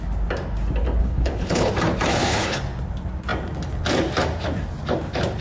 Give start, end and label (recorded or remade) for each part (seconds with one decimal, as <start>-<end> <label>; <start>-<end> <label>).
0.0-1.0 recorded; 1.0-1.7 remade; 1.7-2.1 recorded; 2.1-2.6 remade; 2.6-5.4 recorded